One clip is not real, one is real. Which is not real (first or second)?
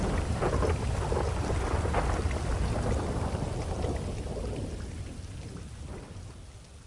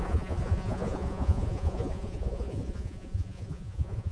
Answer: second